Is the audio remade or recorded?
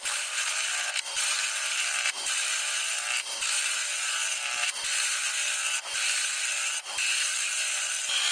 remade